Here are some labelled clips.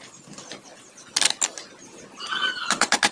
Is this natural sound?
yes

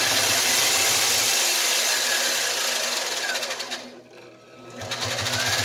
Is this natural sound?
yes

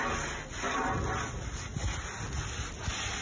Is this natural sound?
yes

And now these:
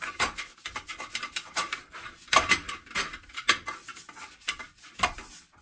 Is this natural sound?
yes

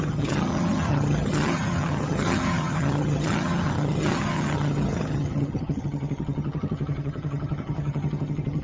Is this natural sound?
no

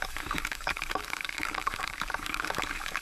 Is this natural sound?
no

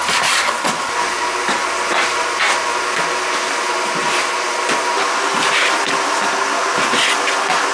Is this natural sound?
yes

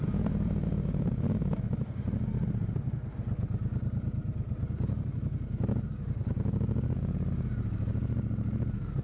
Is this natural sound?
yes